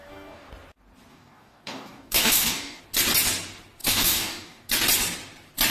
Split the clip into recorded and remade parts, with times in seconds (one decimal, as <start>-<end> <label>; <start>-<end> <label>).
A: 0.0-0.5 remade; 0.5-1.1 recorded; 1.1-2.8 remade; 2.8-3.8 recorded; 3.8-4.7 remade; 4.7-5.7 recorded